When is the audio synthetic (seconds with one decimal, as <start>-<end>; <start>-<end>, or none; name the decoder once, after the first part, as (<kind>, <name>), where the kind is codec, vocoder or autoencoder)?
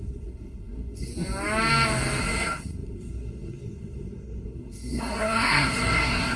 0.0-1.1 (codec, SNAC); 2.2-6.4